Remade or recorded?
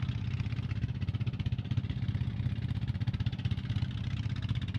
recorded